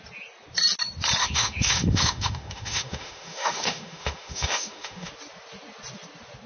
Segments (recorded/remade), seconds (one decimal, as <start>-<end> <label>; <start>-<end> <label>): 0.0-1.2 recorded; 1.2-5.1 remade; 5.1-6.5 recorded